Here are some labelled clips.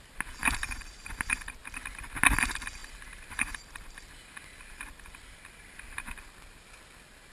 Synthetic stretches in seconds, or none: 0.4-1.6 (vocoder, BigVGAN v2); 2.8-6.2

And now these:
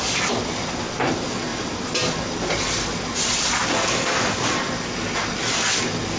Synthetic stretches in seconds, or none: none

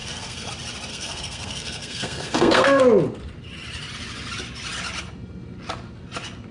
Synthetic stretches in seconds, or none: 0.0-0.5 (codec, SNAC); 0.9-2.8

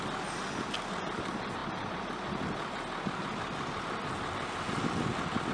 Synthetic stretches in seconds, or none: none